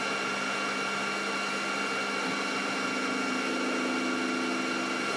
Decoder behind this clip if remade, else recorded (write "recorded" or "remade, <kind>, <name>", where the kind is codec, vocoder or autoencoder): recorded